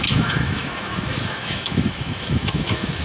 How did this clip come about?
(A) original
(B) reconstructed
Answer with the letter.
B